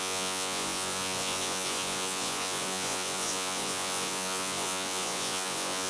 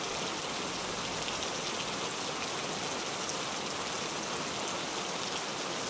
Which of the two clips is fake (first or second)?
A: first